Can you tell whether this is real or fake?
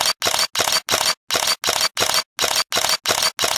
real